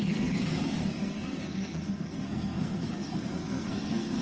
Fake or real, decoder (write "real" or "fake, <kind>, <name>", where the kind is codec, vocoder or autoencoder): fake, codec, SNAC